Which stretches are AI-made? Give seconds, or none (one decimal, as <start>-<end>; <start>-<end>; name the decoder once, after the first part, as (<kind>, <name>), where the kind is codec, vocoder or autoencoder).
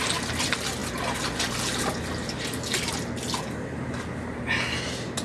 none